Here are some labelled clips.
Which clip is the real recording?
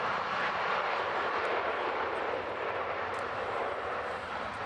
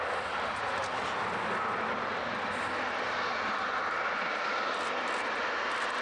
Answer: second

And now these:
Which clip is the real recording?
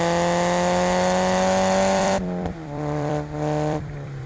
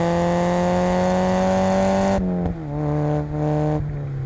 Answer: second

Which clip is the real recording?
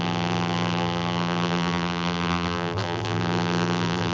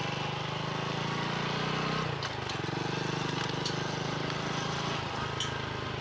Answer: second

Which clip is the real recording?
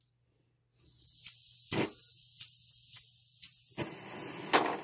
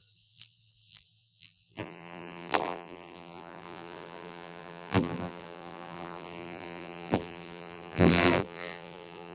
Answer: first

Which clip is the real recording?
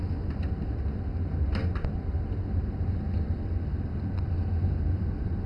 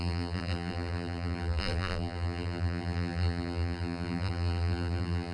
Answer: first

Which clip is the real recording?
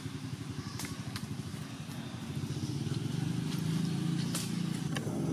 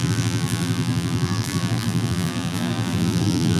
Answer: first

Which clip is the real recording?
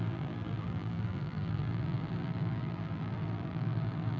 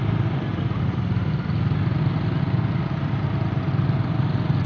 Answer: second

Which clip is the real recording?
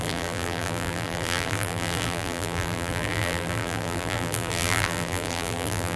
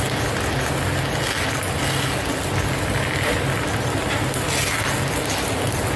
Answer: second